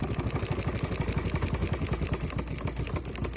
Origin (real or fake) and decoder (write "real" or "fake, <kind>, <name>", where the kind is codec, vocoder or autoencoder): real